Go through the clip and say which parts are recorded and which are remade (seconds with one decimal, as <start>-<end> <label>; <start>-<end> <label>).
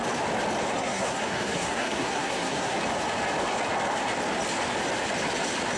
0.0-0.7 recorded; 0.7-2.8 remade; 2.8-5.8 recorded